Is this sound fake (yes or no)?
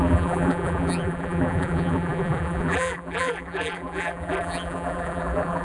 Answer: yes